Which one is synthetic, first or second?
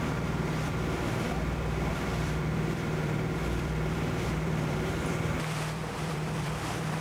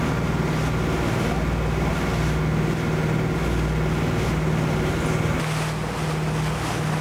first